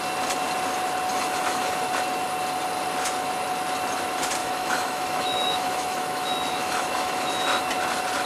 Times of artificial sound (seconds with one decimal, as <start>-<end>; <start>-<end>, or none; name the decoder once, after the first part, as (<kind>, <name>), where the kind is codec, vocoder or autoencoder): 1.1-1.9 (autoencoder, DAC-VAE); 4.4-7.6